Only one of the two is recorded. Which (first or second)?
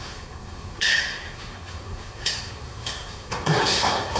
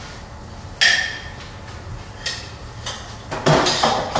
second